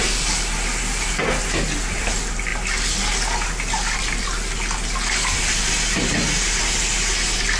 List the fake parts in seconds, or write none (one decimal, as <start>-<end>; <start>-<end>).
none